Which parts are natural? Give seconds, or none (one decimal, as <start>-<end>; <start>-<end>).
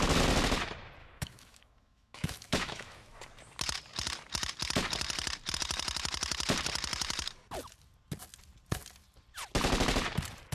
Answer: 0.0-1.0; 3.2-10.5